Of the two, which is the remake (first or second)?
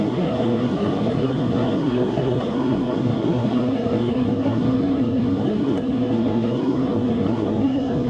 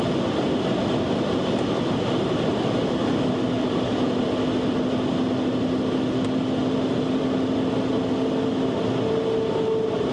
first